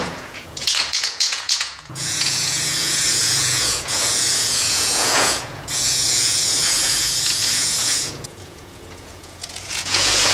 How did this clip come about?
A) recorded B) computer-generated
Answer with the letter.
B